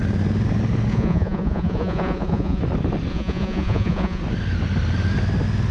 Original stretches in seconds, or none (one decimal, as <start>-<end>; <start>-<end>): 0.0-0.9; 2.6-3.1; 4.2-5.7